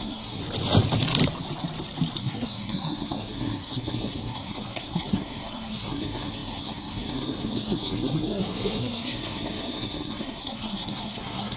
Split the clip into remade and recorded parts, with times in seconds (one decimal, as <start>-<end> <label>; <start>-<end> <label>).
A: 0.0-0.4 remade; 0.4-2.2 recorded; 2.2-11.6 remade